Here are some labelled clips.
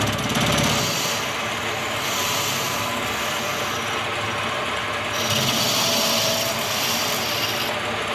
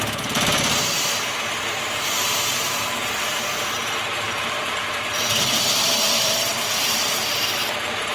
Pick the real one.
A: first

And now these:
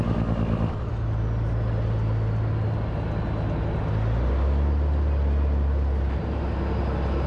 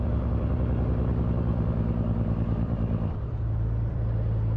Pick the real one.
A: first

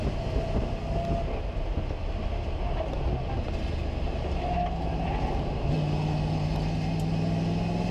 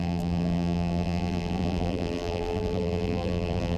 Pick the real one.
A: first